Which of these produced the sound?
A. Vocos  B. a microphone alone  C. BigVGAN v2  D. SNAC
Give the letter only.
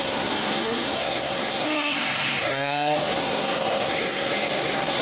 D